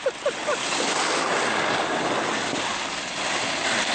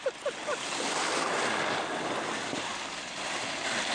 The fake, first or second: second